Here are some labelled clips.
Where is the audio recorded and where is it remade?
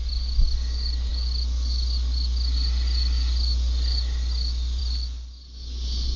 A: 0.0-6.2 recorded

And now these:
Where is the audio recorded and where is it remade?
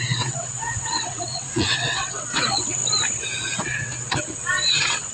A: 0.0-2.8 remade; 2.8-3.6 recorded; 3.6-5.1 remade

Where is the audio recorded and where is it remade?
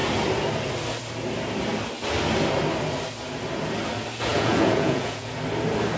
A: 0.0-4.3 recorded; 4.3-5.3 remade; 5.3-6.0 recorded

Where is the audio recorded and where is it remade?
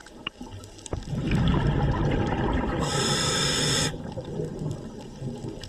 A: 0.0-5.7 recorded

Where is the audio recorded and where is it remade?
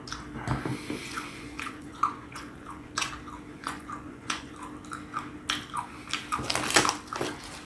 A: 0.0-1.0 recorded; 1.0-3.1 remade; 3.1-3.5 recorded; 3.5-4.5 remade; 4.5-7.6 recorded